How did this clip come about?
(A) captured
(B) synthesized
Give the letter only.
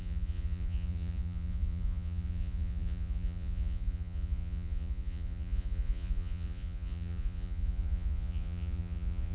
B